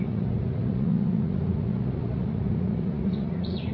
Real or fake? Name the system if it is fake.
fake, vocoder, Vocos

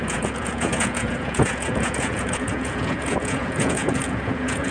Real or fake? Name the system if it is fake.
fake, vocoder, Vocos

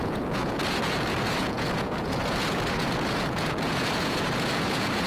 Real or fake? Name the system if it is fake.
fake, vocoder, Vocos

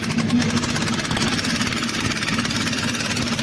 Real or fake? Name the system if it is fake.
real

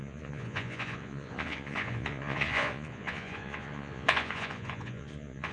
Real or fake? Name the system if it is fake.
fake, vocoder, Vocos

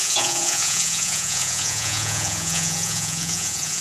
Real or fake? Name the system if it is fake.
fake, vocoder, Vocos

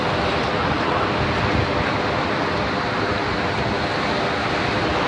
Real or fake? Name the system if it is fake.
real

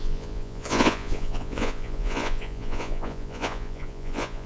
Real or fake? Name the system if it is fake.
fake, vocoder, Vocos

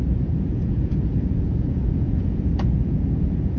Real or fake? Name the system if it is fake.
fake, vocoder, Vocos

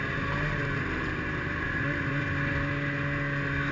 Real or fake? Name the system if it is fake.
real